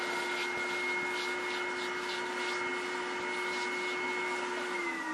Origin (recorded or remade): recorded